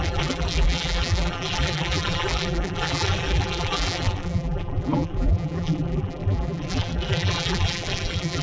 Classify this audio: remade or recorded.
remade